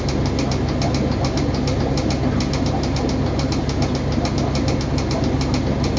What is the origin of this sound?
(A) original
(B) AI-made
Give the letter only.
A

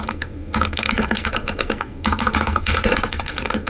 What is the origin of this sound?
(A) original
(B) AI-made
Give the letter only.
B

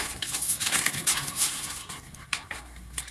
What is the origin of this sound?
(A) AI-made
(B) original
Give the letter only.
A